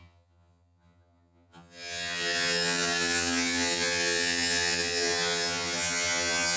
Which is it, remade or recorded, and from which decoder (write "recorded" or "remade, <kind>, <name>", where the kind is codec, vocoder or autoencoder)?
remade, vocoder, HiFi-GAN